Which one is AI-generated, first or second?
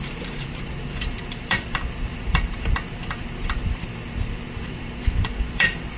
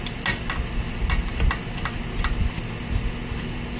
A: first